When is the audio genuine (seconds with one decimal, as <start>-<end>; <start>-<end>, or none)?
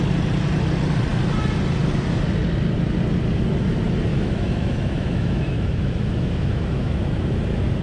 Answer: 0.0-4.1; 7.3-7.8